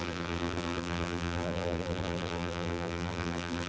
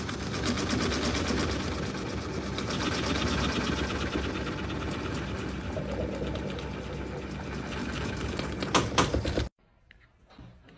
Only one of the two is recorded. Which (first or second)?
second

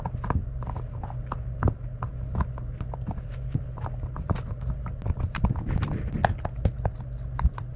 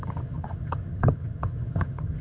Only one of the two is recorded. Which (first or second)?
first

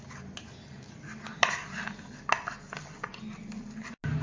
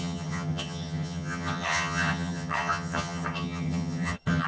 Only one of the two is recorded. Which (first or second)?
first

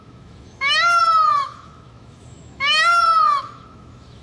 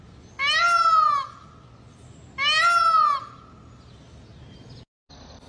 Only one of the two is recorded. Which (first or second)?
second